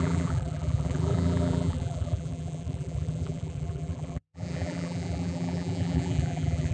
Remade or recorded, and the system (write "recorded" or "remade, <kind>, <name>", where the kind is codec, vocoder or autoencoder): remade, vocoder, BigVGAN v2